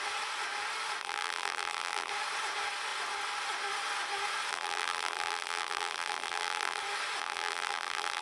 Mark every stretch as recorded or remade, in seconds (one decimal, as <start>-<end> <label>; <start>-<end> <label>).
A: 0.0-1.0 recorded; 1.0-2.1 remade; 2.1-4.5 recorded; 4.5-6.8 remade; 6.8-7.2 recorded; 7.2-8.2 remade